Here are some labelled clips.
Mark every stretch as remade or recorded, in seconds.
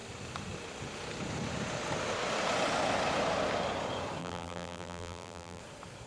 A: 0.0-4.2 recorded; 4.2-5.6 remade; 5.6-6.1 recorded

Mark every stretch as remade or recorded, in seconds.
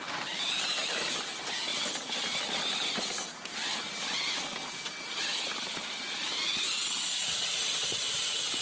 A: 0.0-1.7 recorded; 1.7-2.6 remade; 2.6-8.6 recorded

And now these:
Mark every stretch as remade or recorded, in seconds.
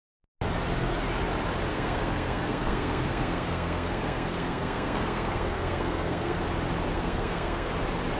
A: 0.0-1.7 recorded; 1.7-6.4 remade; 6.4-6.9 recorded; 6.9-7.7 remade; 7.7-8.2 recorded